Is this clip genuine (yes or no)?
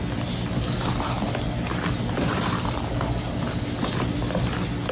yes